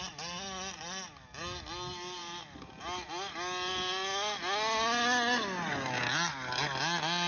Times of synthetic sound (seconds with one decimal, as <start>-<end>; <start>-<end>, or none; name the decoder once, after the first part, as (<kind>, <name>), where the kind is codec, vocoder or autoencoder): none